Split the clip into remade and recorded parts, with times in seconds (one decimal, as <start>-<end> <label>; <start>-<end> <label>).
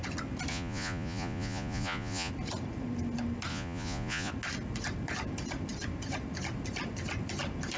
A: 0.0-0.5 recorded; 0.5-2.3 remade; 2.3-3.5 recorded; 3.5-4.3 remade; 4.3-7.8 recorded